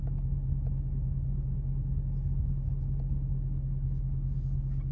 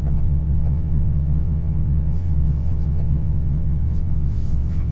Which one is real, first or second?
first